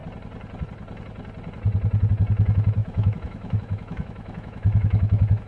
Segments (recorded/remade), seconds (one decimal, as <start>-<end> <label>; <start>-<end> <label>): 0.0-2.8 recorded; 2.8-5.5 remade